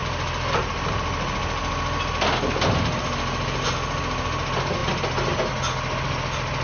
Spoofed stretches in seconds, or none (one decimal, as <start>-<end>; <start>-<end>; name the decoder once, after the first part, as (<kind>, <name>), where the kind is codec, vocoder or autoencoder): none